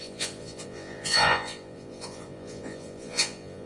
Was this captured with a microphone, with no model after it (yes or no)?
no